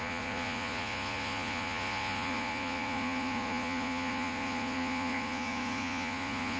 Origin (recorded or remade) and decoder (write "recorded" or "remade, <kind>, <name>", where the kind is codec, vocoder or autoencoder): remade, vocoder, Vocos